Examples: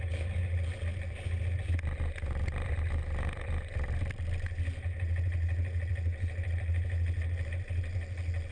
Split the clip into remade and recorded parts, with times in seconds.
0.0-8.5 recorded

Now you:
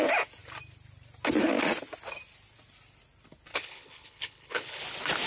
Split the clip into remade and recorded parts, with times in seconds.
0.0-3.5 recorded; 3.5-4.8 remade; 4.8-5.3 recorded

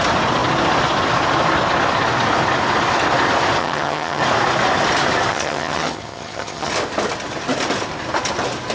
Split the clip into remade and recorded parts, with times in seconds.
0.0-3.6 recorded; 3.6-4.2 remade; 4.2-5.3 recorded; 5.3-6.7 remade; 6.7-8.7 recorded

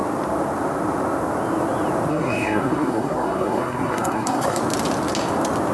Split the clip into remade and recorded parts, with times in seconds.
0.0-2.1 recorded; 2.1-4.6 remade; 4.6-5.7 recorded

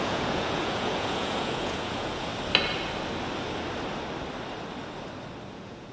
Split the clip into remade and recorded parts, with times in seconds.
0.0-2.3 remade; 2.3-5.5 recorded; 5.5-5.9 remade

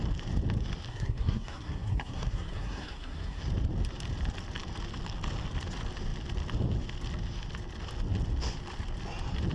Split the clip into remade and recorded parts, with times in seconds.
0.0-0.9 recorded; 0.9-3.4 remade; 3.4-9.5 recorded

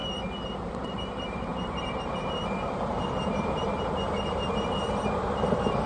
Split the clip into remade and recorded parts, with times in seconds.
0.0-0.7 recorded; 0.7-5.9 remade

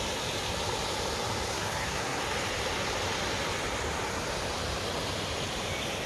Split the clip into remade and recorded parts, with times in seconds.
0.0-1.5 recorded; 1.5-2.2 remade; 2.2-6.1 recorded